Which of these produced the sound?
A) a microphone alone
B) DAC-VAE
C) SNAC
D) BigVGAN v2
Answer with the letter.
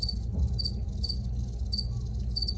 A